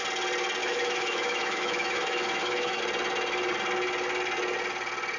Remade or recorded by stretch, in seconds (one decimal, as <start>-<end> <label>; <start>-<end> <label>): 0.0-0.6 recorded; 0.6-2.8 remade; 2.8-5.2 recorded